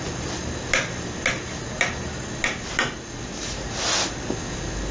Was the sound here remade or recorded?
recorded